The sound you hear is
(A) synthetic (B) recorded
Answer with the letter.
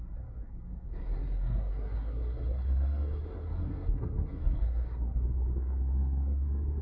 A